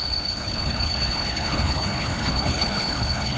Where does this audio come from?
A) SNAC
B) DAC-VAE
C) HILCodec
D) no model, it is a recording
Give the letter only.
C